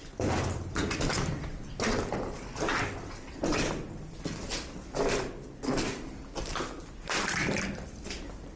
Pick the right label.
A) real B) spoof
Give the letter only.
B